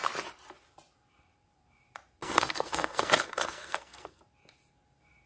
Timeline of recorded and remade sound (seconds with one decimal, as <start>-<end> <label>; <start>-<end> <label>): 0.0-2.2 recorded; 2.2-4.2 remade; 4.2-5.3 recorded